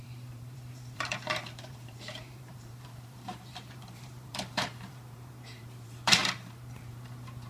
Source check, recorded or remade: remade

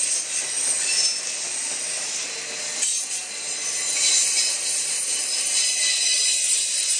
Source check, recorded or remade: recorded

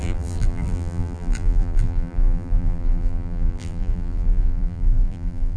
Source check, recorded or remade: remade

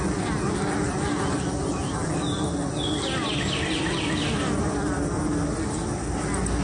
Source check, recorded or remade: recorded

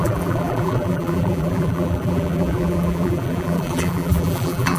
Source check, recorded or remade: remade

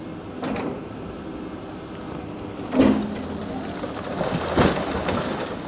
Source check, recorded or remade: recorded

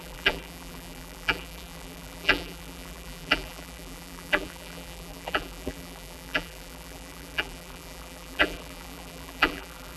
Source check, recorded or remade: remade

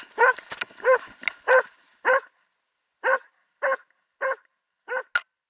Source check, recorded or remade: recorded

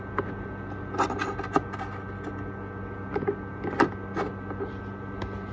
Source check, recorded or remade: recorded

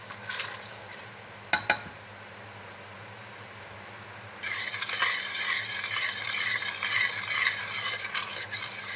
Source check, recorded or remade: remade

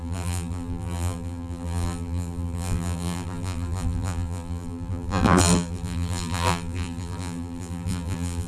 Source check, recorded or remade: remade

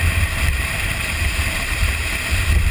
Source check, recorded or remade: remade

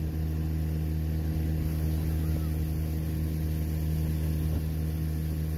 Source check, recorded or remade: recorded